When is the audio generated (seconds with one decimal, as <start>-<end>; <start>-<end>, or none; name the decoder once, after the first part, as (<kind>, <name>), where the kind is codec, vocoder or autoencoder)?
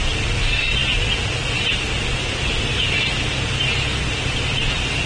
none